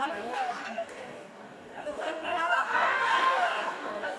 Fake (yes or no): yes